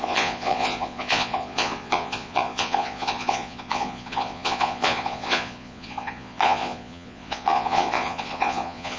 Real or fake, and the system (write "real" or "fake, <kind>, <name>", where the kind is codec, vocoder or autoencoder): fake, vocoder, Vocos